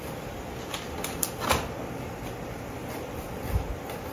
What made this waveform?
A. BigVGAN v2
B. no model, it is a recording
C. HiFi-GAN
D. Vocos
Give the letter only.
A